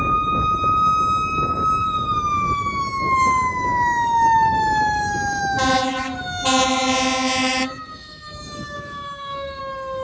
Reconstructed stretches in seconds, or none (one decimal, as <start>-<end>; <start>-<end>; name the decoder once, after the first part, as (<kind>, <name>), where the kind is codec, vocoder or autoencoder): 1.8-5.4 (autoencoder, DAC-VAE); 7.4-9.6

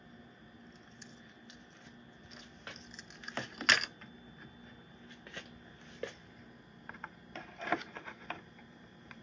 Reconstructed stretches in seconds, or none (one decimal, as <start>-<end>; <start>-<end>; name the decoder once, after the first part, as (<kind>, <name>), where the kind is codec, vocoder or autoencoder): 6.2-9.2 (vocoder, BigVGAN v2)

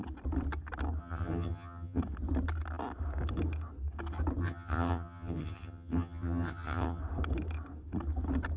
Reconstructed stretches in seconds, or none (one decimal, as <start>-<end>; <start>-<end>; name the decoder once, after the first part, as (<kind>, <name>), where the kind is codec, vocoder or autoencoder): 1.0-2.0 (vocoder, HiFi-GAN); 4.4-7.0

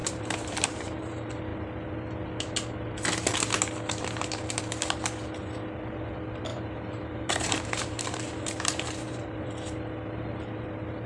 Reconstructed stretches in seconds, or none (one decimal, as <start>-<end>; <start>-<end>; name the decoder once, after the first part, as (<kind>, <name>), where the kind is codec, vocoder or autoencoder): 0.0-1.1 (vocoder, BigVGAN v2); 6.5-9.5

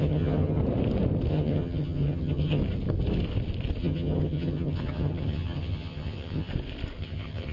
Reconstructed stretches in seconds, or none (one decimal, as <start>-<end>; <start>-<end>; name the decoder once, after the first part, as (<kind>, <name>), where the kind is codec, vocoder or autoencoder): 0.0-0.6 (vocoder, HiFi-GAN); 1.3-2.6; 3.8-6.5; 7.0-7.5

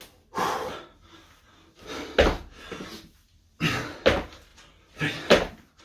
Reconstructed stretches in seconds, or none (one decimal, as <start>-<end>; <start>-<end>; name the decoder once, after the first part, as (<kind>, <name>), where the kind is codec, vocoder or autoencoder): none

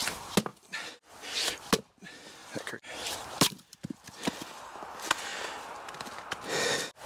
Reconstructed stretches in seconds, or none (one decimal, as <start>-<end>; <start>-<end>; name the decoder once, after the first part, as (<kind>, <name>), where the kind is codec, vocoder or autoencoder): 2.4-4.3 (vocoder, BigVGAN v2)